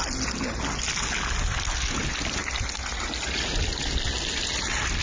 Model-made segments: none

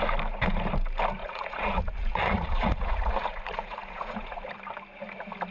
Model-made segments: 1.2-4.5 (vocoder, Vocos)